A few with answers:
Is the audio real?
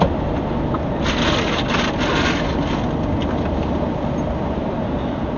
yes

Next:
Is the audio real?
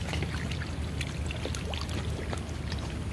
yes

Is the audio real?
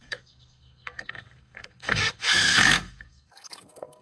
no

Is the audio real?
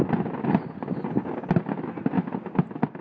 yes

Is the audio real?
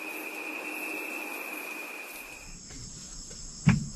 yes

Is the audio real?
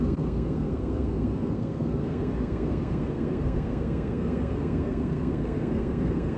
no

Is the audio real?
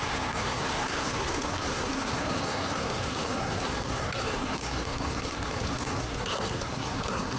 no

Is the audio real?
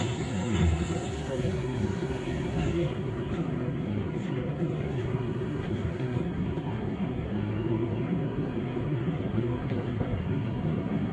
no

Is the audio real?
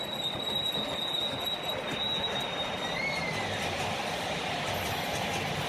yes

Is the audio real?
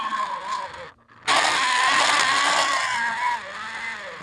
yes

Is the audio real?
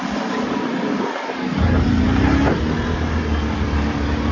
yes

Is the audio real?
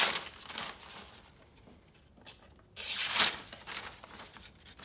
yes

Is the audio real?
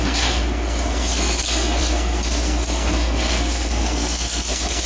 no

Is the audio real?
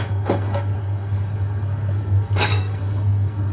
no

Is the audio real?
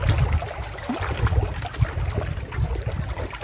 yes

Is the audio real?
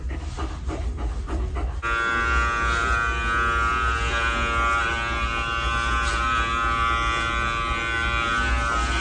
yes